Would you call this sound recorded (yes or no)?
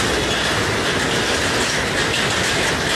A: yes